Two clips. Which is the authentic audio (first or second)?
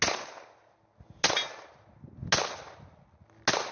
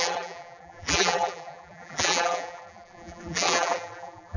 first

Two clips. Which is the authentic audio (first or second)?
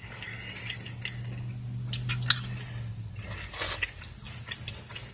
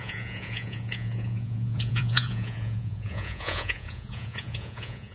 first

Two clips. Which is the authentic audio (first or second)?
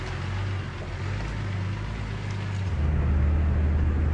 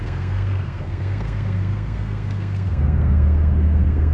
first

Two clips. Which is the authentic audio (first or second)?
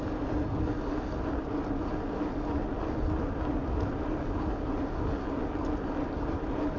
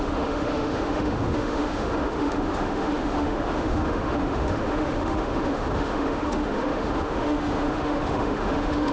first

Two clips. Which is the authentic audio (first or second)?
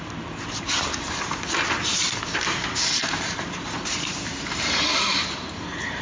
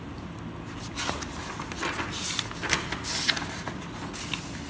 second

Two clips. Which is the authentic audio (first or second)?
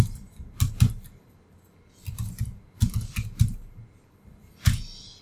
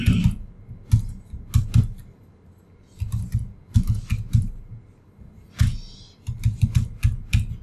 second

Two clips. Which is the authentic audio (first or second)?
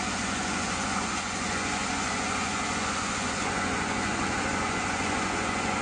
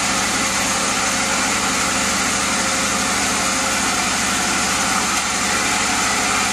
second